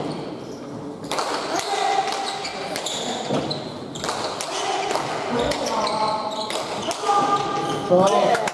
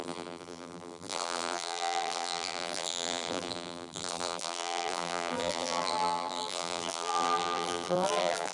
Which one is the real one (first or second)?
first